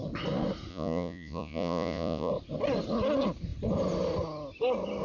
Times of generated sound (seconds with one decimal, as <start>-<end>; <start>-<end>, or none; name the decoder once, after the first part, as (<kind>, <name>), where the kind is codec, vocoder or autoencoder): 0.7-2.3 (vocoder, Vocos)